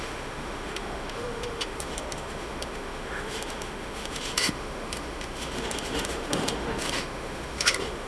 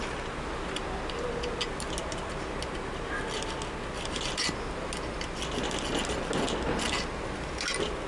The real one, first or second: second